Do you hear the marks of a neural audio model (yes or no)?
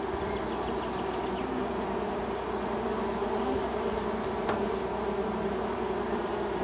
no